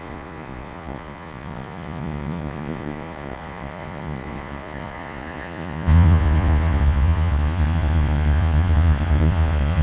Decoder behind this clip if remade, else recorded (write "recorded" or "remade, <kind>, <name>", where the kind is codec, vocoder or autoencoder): remade, vocoder, Vocos